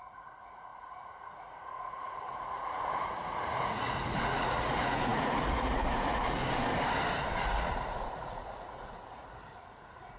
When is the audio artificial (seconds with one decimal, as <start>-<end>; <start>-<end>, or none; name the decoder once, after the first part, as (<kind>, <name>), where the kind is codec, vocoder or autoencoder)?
0.0-6.4 (vocoder, Vocos); 7.3-10.2